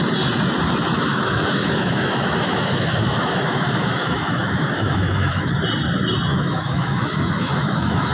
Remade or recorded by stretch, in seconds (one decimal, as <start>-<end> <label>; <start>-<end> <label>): 0.0-1.1 recorded; 1.1-5.5 remade; 5.5-6.3 recorded; 6.3-8.1 remade